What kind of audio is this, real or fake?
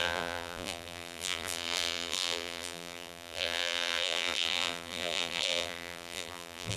fake